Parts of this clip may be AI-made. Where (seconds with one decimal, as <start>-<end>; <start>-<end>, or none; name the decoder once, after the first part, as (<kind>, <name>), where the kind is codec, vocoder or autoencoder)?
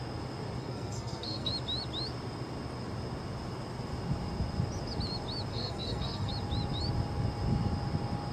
0.6-1.5 (codec, SNAC); 5.5-6.3